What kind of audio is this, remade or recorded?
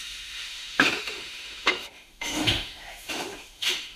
remade